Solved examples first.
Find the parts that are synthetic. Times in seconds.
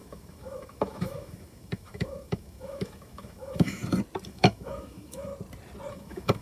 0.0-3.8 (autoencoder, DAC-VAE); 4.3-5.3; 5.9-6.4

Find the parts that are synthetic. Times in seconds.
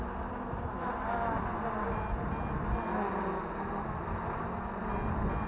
none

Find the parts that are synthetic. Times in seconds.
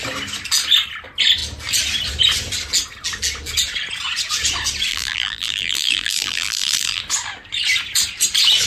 4.9-7.0 (vocoder, BigVGAN v2)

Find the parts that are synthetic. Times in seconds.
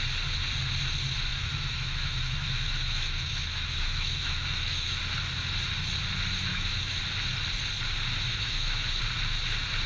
1.3-5.0 (autoencoder, DAC-VAE); 6.5-7.0; 8.3-9.0